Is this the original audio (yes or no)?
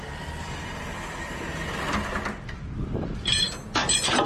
yes